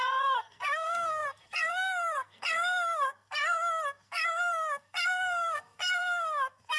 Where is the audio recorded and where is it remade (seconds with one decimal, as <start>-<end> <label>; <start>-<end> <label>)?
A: 0.0-6.8 remade